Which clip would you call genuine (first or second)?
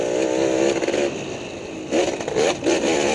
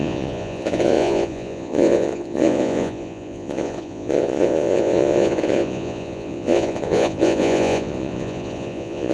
first